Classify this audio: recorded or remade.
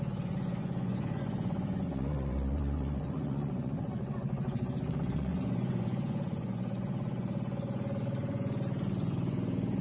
remade